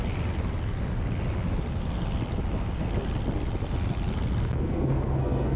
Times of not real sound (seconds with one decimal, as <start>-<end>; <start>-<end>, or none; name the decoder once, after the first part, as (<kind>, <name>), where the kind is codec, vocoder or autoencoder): 4.4-5.6 (codec, SNAC)